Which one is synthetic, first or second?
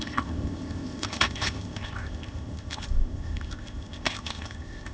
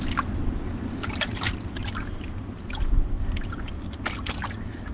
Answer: first